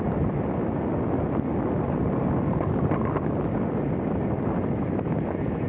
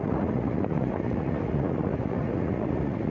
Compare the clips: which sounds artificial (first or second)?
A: second